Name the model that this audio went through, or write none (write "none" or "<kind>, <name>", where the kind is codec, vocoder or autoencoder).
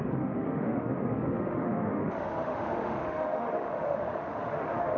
autoencoder, DAC-VAE